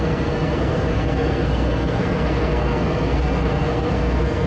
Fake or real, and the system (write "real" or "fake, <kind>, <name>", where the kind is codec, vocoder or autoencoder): fake, codec, SNAC